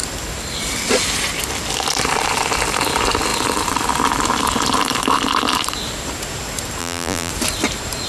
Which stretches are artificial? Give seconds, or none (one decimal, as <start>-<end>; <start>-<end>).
6.8-7.3